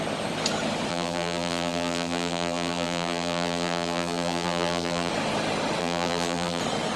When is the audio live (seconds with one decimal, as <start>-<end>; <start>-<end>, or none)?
0.0-0.9; 5.1-5.8; 6.6-7.0